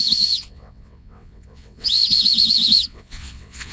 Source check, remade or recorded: remade